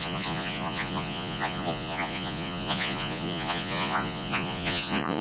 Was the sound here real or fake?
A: fake